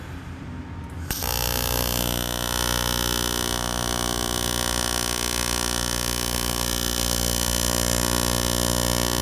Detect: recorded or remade recorded